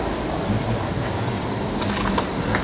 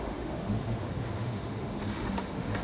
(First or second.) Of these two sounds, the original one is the first